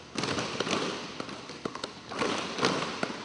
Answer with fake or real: real